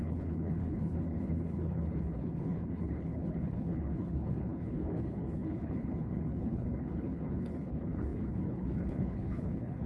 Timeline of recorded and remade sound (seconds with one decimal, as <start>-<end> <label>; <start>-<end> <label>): 0.0-9.9 remade